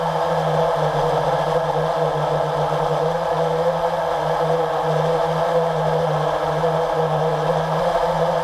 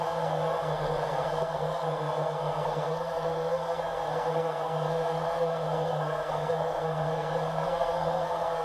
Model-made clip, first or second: second